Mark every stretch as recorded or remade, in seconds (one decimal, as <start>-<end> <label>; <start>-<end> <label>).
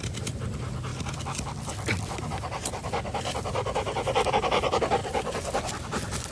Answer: 0.0-0.9 remade; 0.9-4.3 recorded; 4.3-6.3 remade